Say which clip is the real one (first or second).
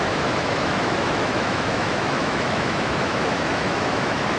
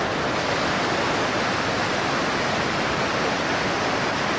second